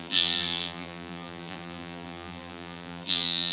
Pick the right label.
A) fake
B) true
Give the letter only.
A